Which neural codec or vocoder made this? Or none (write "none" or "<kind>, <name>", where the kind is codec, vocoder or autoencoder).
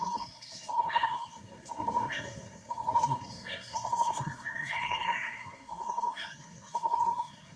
codec, SNAC